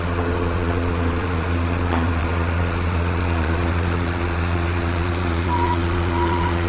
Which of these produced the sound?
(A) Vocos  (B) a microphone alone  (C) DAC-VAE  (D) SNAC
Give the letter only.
A